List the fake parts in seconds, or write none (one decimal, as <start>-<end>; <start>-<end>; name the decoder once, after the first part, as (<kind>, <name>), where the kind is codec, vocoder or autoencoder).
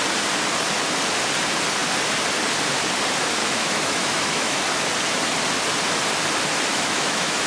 3.4-4.6 (autoencoder, DAC-VAE); 6.7-7.5